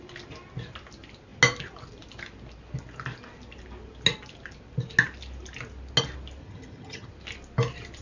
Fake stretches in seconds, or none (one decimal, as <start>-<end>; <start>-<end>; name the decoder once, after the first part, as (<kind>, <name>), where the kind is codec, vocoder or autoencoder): 6.4-7.1 (vocoder, HiFi-GAN)